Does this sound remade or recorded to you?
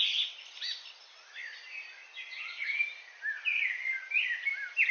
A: recorded